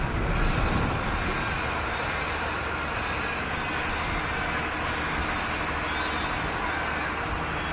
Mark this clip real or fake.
real